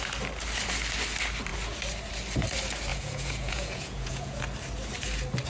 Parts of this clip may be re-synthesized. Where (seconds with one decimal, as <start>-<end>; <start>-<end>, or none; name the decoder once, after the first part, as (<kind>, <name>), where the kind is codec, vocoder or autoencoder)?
2.9-4.4 (vocoder, Vocos)